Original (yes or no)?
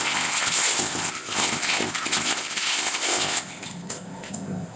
no